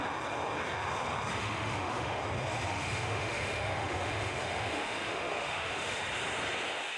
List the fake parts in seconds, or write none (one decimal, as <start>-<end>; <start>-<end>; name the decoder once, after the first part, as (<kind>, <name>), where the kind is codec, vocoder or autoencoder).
1.4-2.2 (autoencoder, DAC-VAE); 2.7-6.0

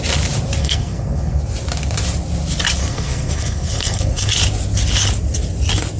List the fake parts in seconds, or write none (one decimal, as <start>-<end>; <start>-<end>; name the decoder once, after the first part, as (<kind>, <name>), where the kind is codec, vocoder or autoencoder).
0.6-1.4 (codec, SNAC); 2.8-4.3

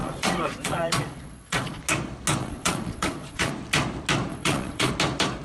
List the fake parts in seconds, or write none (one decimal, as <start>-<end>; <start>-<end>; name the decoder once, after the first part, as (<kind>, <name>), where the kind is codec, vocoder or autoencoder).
0.0-1.8 (vocoder, Vocos); 2.4-3.5; 4.3-4.9

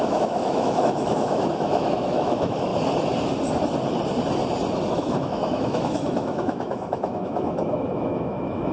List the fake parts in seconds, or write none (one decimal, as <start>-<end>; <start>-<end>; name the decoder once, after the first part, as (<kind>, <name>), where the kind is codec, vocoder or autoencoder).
0.0-2.7 (autoencoder, DAC-VAE); 4.9-8.7